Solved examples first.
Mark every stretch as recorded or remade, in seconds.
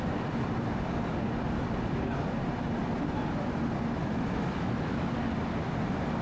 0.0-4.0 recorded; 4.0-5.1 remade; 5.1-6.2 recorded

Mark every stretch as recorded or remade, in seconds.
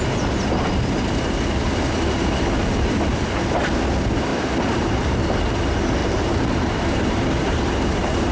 0.0-4.3 recorded; 4.3-5.6 remade; 5.6-6.0 recorded; 6.0-8.3 remade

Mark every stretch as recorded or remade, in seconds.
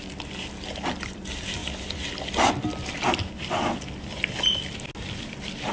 0.0-5.7 recorded